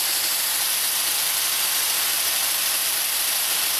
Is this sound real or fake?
fake